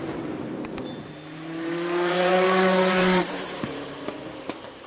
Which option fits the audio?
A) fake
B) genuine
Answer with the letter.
A